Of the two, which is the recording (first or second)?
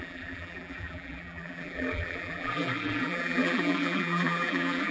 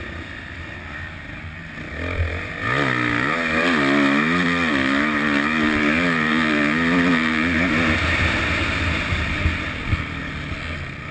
second